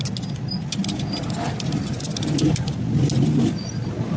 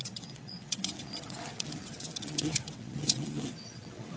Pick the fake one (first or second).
second